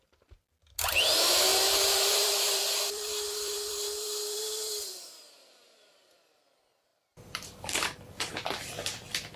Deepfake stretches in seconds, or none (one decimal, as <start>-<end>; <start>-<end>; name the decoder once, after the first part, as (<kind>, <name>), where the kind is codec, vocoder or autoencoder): 1.5-6.3 (vocoder, BigVGAN v2); 6.9-8.3